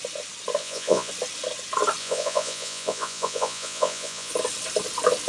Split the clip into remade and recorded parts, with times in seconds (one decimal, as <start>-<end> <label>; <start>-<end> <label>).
0.0-0.6 recorded; 0.6-1.1 remade; 1.1-2.0 recorded; 2.0-4.3 remade; 4.3-5.3 recorded